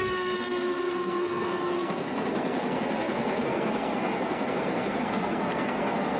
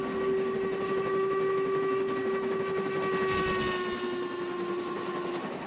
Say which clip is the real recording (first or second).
second